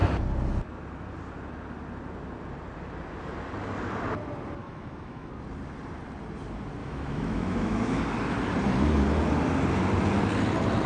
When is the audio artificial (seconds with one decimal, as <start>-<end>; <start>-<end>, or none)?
4.6-5.3; 6.8-8.0